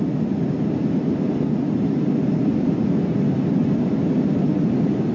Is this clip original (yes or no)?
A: yes